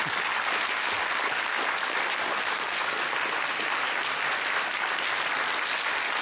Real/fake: real